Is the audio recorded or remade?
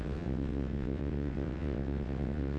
remade